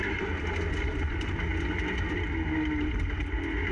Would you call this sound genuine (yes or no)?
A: yes